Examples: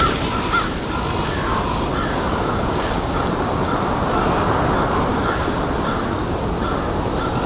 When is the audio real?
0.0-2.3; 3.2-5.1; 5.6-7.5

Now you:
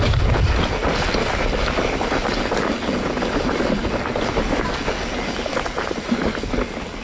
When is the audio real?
0.0-7.0

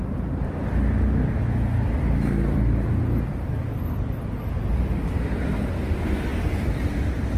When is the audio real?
0.0-7.4

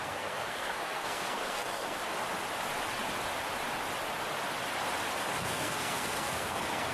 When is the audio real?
2.0-5.4

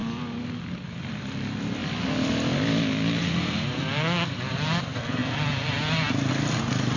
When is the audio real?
0.0-7.0